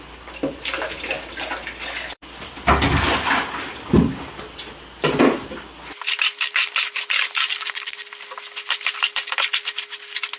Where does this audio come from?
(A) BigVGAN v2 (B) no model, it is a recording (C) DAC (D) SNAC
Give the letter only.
A